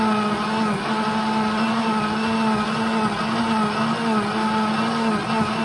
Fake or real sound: real